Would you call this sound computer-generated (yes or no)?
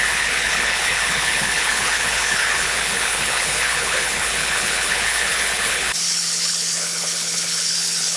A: yes